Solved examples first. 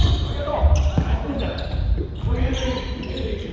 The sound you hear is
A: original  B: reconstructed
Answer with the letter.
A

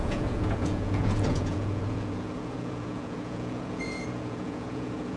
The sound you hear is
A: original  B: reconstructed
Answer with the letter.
B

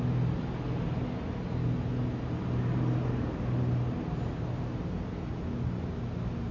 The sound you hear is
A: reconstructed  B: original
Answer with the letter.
B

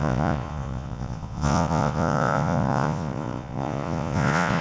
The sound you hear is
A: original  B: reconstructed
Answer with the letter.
B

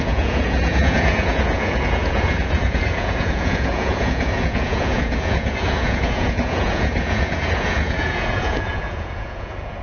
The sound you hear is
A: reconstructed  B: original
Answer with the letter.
A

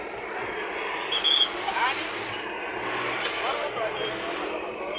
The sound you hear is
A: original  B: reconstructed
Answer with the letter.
A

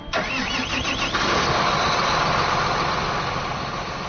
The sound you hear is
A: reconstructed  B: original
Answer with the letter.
B